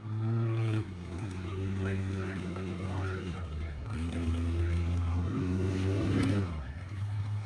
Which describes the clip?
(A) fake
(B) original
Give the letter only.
A